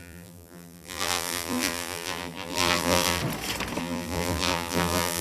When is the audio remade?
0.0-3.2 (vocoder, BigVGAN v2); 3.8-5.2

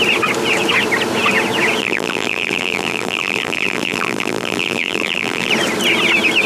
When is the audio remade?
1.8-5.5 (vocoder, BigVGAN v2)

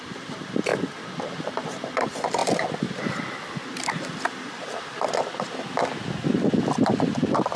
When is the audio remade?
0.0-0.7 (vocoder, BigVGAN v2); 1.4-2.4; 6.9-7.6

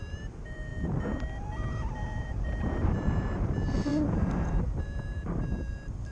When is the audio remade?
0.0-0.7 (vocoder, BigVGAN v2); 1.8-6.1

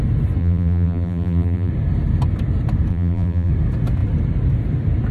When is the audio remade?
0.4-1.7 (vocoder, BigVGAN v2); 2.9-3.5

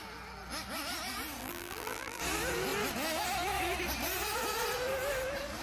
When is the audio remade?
1.4-2.2 (vocoder, BigVGAN v2)

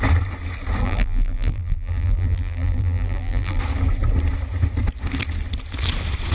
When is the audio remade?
0.8-3.6 (vocoder, BigVGAN v2)